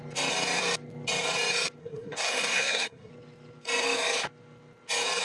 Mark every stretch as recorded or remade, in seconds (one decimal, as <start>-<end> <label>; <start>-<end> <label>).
0.0-1.8 recorded; 1.8-3.1 remade; 3.1-5.2 recorded